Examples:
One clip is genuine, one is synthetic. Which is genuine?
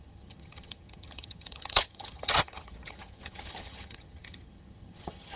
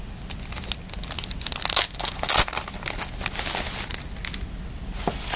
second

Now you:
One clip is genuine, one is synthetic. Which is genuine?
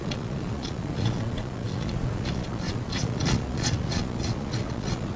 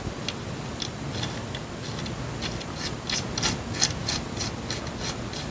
second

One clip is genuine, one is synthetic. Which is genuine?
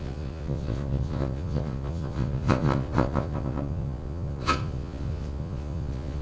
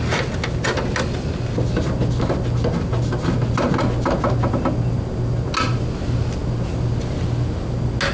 second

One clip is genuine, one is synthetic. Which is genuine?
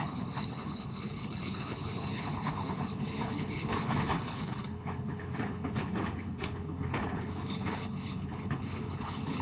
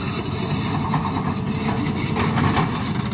second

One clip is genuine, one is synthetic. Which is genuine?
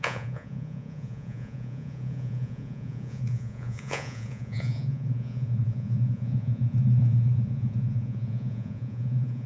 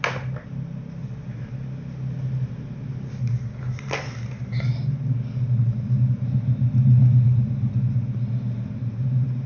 second